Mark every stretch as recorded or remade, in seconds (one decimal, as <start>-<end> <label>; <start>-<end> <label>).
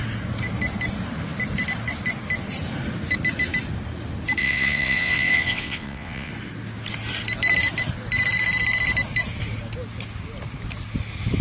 0.0-4.4 recorded; 4.4-6.3 remade; 6.3-11.4 recorded